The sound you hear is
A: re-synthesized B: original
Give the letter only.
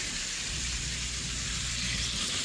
B